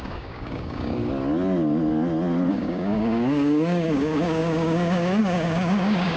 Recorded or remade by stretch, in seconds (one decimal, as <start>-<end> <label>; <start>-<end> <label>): 0.0-1.0 remade; 1.0-2.5 recorded; 2.5-6.2 remade